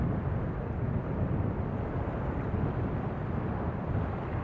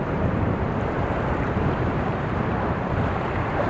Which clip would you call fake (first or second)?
second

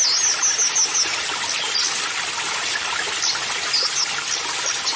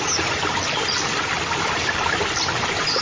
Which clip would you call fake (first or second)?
second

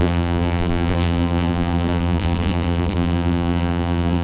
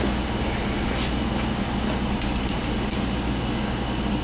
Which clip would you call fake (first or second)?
first